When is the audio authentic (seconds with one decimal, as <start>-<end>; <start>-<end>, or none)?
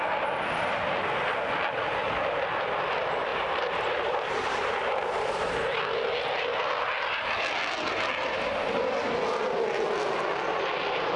0.0-3.3; 5.8-11.2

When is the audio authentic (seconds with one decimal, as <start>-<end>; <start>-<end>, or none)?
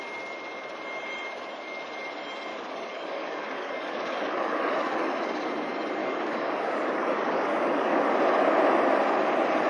0.0-2.5; 5.5-6.0; 8.1-9.7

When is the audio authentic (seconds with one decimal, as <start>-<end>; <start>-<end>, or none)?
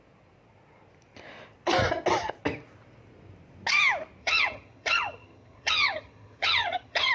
0.0-4.2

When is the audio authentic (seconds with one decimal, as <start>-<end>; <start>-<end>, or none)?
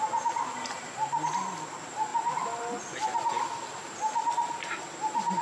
0.0-5.4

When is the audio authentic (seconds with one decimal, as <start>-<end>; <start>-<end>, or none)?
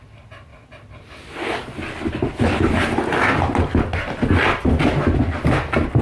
0.0-6.0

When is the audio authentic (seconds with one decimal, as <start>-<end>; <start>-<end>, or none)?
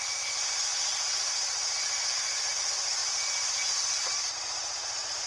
0.7-2.5; 3.0-4.3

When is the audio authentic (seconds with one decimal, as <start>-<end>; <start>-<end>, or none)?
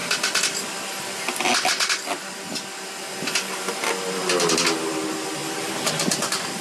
0.0-6.6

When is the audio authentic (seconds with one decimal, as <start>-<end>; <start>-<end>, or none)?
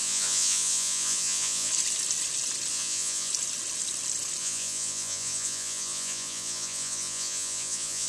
1.7-2.7; 3.3-4.4